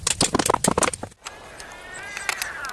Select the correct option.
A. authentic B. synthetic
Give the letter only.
A